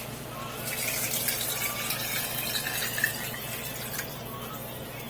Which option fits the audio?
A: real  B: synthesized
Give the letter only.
A